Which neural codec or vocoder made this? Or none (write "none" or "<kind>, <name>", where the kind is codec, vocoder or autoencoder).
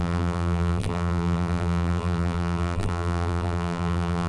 vocoder, BigVGAN v2